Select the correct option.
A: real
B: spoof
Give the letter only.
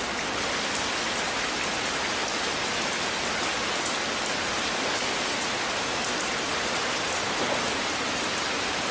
A